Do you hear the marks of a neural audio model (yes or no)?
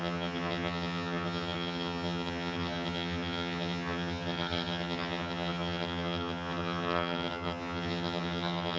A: yes